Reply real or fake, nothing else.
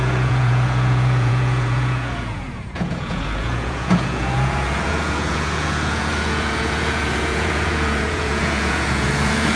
fake